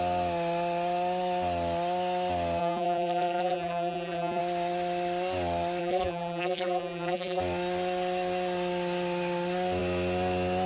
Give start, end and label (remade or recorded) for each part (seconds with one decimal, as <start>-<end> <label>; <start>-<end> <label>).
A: 0.0-2.6 recorded; 2.6-4.4 remade; 4.4-5.8 recorded; 5.8-7.4 remade; 7.4-10.7 recorded